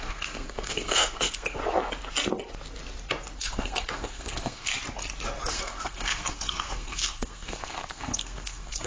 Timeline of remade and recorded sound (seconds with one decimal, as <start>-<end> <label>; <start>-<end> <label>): 0.0-1.6 remade; 1.6-3.4 recorded; 3.4-4.7 remade; 4.7-5.5 recorded; 5.5-8.9 remade